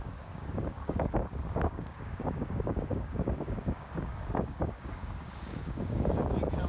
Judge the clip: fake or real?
fake